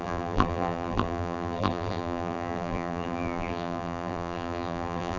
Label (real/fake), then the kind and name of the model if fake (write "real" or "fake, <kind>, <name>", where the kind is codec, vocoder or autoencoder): fake, vocoder, BigVGAN v2